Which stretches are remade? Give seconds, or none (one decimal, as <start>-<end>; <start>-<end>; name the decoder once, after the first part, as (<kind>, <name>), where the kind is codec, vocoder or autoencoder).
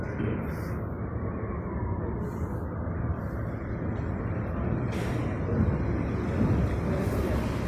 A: 3.1-4.2 (vocoder, BigVGAN v2)